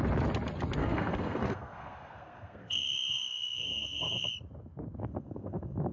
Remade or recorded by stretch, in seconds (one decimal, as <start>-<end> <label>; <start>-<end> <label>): 0.0-0.8 recorded; 0.8-4.3 remade; 4.3-5.0 recorded; 5.0-5.9 remade